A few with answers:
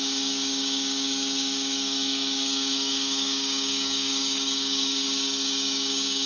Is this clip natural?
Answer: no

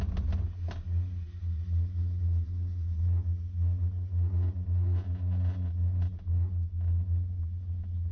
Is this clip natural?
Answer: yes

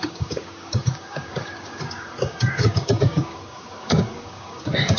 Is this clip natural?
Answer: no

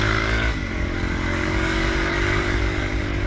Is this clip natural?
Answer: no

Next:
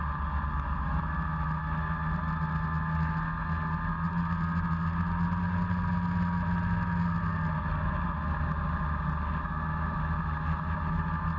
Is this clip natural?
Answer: yes